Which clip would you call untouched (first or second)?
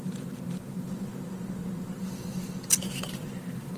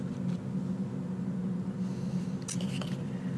second